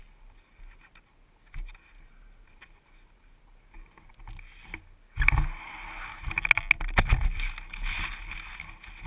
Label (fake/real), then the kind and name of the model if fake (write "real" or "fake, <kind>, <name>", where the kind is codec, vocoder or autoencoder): real